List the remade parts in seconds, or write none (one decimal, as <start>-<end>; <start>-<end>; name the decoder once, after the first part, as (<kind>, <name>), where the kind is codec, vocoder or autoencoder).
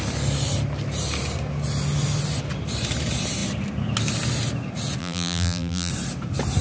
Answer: 5.0-5.9 (vocoder, BigVGAN v2)